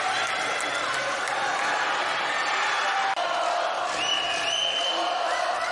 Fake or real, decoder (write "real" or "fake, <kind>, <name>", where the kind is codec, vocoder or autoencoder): real